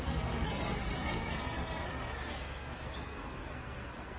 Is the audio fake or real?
fake